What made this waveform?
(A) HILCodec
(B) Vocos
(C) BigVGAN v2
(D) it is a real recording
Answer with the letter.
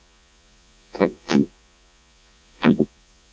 B